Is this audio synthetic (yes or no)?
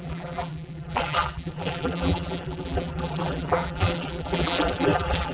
yes